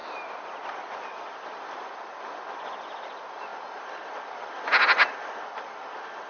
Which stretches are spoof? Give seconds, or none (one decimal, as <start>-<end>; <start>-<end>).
none